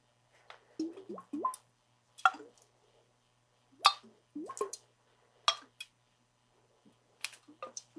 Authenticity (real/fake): real